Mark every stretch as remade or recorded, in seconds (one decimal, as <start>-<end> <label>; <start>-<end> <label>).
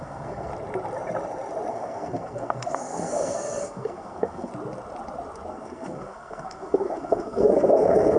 0.0-0.5 remade; 0.5-1.7 recorded; 1.7-4.5 remade; 4.5-5.5 recorded; 5.5-8.2 remade